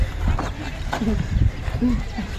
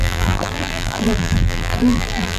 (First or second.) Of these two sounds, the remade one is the second